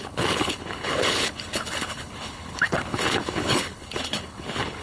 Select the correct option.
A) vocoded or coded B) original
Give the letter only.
A